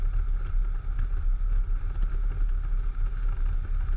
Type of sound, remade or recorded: recorded